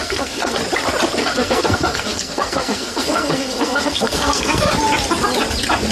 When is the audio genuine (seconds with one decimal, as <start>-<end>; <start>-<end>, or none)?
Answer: 0.6-1.2; 4.7-5.9